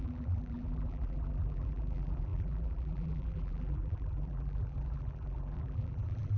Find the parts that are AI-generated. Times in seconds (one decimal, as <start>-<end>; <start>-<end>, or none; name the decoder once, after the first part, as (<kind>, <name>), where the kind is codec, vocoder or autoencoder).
0.0-6.4 (vocoder, BigVGAN v2)